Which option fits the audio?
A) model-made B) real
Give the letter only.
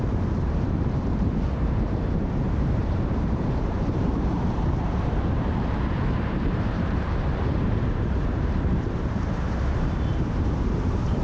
A